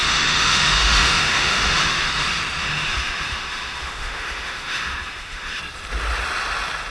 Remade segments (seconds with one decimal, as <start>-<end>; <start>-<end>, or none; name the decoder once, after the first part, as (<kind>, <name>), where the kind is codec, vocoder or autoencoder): 0.0-2.1 (autoencoder, DAC-VAE); 2.6-5.6